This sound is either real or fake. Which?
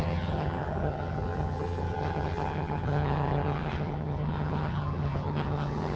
fake